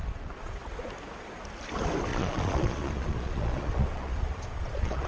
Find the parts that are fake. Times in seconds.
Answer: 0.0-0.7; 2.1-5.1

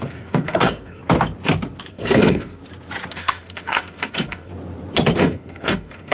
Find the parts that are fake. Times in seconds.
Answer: 0.0-1.0; 1.9-2.6; 3.1-4.5; 5.2-6.1

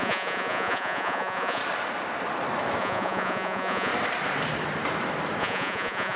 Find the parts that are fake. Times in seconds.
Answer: 0.0-1.6; 2.8-3.9; 5.4-6.2